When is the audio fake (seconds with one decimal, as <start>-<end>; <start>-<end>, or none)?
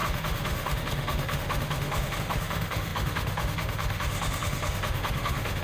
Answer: 0.0-5.6